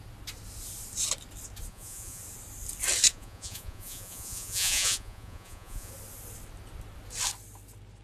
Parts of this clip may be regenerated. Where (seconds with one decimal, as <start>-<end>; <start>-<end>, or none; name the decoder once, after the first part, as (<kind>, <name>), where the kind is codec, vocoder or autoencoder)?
1.7-2.2 (vocoder, Vocos); 3.1-5.9